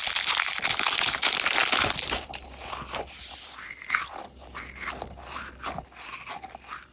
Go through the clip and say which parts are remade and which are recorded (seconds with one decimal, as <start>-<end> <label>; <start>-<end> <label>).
0.0-6.9 recorded